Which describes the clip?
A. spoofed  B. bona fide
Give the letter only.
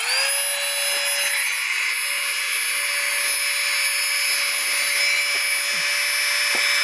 B